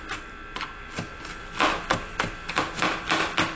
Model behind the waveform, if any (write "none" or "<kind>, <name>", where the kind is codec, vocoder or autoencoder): vocoder, BigVGAN v2